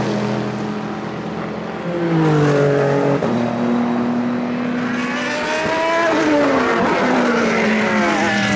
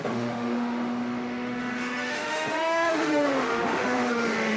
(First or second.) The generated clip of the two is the second